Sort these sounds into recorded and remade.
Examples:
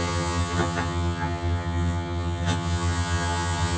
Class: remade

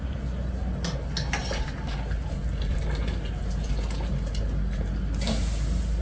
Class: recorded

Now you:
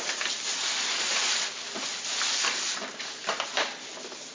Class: recorded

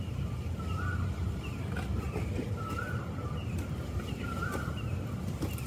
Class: recorded